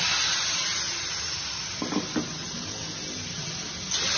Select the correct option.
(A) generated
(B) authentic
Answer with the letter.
B